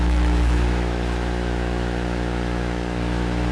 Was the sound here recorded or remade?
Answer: remade